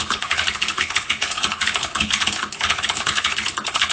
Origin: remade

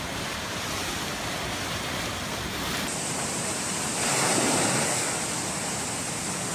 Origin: recorded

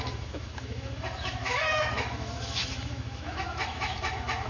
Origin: remade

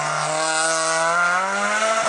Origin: recorded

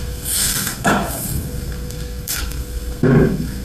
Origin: remade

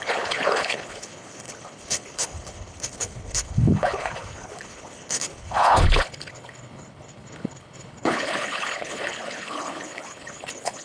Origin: remade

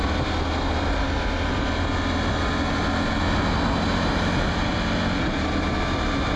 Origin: recorded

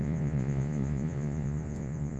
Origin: remade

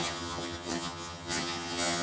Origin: remade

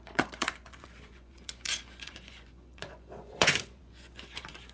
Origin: remade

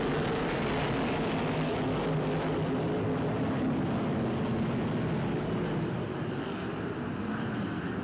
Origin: recorded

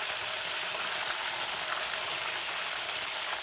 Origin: recorded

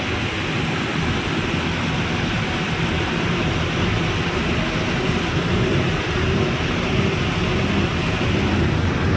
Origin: recorded